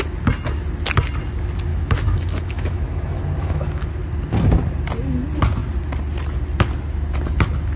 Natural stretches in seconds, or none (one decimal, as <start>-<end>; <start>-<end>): 0.0-1.7; 3.9-7.8